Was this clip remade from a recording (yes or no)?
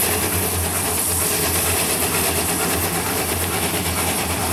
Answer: no